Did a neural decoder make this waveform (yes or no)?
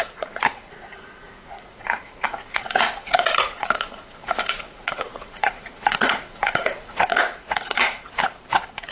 yes